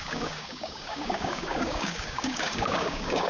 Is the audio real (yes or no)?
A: no